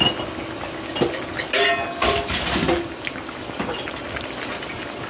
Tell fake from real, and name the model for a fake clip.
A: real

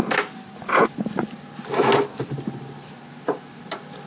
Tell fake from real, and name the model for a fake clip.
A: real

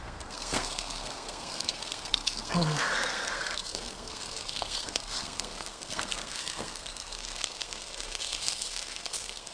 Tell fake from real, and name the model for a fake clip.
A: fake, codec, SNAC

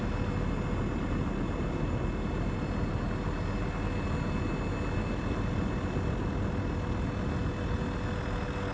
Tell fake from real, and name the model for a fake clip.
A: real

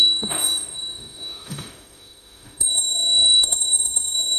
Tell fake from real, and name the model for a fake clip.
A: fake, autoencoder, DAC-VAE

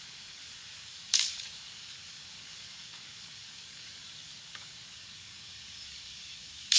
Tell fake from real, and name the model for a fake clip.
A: fake, codec, DAC